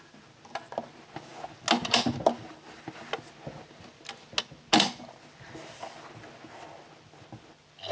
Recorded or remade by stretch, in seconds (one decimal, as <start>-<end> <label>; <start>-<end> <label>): 0.0-7.9 recorded

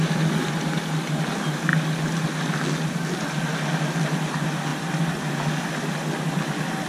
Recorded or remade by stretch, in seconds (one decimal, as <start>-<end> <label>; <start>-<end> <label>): 0.0-6.9 recorded

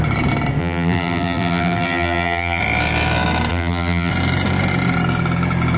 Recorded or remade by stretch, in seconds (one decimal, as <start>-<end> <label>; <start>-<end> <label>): 0.0-0.6 recorded; 0.6-2.6 remade; 2.6-3.5 recorded; 3.5-4.1 remade; 4.1-5.8 recorded

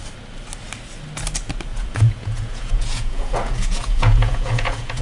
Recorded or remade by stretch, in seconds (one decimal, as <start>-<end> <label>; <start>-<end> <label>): 0.0-1.7 recorded; 1.7-5.0 remade

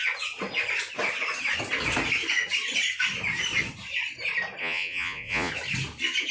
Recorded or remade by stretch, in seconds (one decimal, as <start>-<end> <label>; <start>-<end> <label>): 0.0-4.6 recorded; 4.6-5.5 remade; 5.5-6.3 recorded

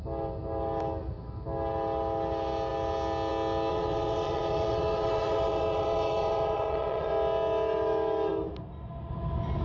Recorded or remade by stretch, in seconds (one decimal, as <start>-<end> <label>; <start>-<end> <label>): 0.0-3.7 recorded; 3.7-7.1 remade; 7.1-9.6 recorded

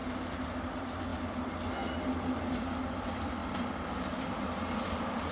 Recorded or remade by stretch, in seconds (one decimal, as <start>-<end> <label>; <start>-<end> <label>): 0.0-0.6 recorded; 0.6-1.1 remade; 1.1-2.5 recorded; 2.5-5.3 remade

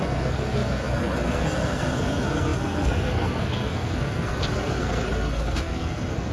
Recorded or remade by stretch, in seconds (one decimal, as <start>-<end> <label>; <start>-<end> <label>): 0.0-6.3 remade